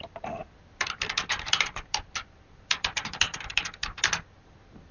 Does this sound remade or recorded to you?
remade